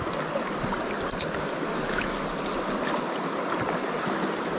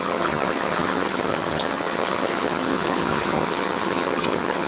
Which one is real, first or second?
first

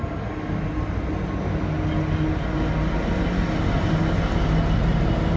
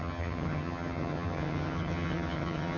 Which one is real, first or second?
first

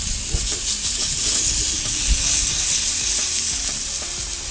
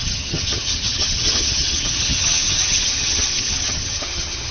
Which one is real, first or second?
first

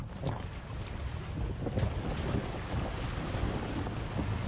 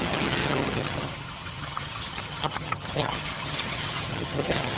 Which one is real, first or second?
first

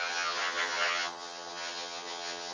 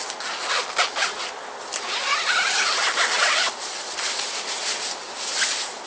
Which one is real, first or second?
second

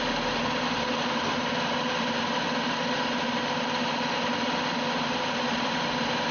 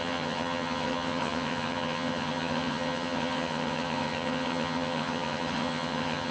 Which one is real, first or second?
first